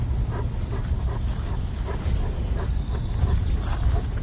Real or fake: real